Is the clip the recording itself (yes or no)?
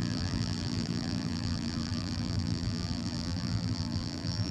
no